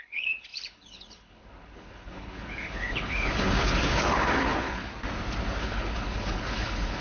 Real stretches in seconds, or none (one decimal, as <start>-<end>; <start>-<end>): 4.9-5.6

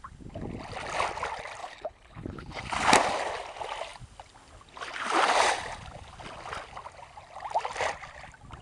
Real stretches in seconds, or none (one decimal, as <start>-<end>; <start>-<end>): 0.0-1.6; 2.6-8.6

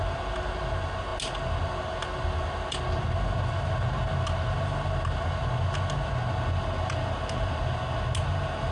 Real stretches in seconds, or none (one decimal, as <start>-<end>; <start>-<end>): 0.0-8.7

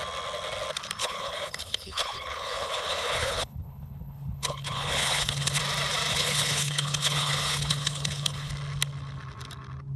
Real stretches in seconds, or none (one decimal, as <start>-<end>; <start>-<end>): 0.0-1.0; 5.6-6.1; 8.5-10.0

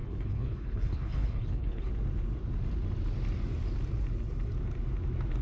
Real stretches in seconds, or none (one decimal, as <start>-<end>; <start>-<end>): 1.9-5.4

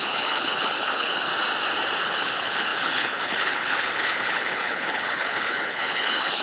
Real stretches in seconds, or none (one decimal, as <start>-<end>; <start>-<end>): 1.3-2.0

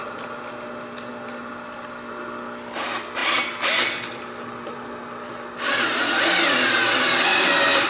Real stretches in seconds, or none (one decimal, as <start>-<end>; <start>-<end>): 0.0-7.9

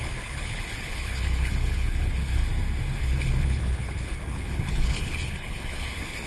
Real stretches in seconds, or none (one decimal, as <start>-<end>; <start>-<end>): 2.4-3.0